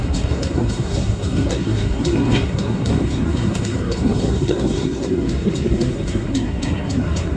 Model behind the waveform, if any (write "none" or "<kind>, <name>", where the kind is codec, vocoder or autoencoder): codec, SNAC